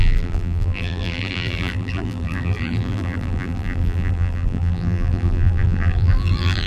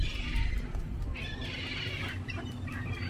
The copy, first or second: first